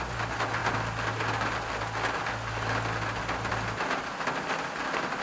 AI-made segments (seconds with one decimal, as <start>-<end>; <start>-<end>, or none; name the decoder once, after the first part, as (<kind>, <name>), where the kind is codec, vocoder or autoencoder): none